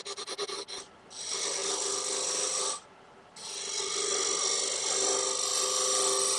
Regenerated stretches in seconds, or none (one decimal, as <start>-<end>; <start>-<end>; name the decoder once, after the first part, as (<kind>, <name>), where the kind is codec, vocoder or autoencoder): none